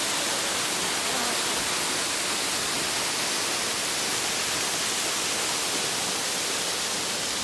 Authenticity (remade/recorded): recorded